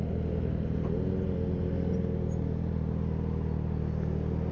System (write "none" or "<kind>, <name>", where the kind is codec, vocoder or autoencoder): none